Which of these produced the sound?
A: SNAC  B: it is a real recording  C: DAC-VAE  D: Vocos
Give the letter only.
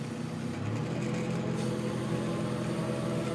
B